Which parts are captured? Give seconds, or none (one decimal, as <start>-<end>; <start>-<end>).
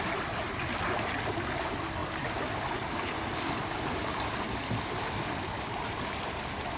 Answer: 0.0-6.8